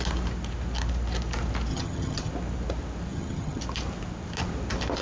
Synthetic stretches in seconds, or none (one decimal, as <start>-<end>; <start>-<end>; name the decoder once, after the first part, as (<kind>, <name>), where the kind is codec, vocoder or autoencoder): 1.7-2.3 (vocoder, HiFi-GAN); 3.1-3.6